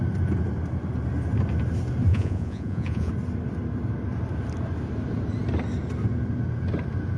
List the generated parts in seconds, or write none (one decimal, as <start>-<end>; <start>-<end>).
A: 2.1-3.1